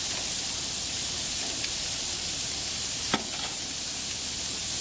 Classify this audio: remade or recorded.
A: recorded